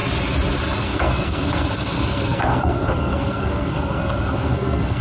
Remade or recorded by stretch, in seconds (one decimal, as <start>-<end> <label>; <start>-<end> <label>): 0.0-0.8 recorded; 0.8-5.0 remade